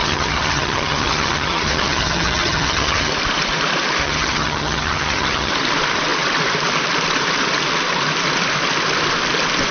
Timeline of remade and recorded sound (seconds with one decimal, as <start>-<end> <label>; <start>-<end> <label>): 0.0-3.1 remade; 3.1-4.0 recorded; 4.0-5.5 remade; 5.5-9.7 recorded